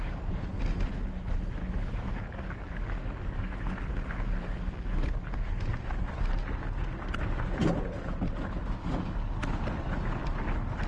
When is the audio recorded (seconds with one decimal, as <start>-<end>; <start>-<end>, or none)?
0.0-1.6; 5.3-8.8; 9.5-10.9